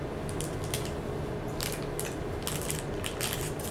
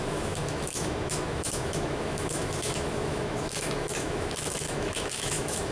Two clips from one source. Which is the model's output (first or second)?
second